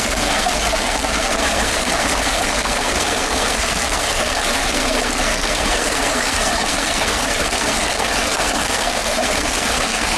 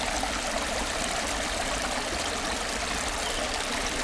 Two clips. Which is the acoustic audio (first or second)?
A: second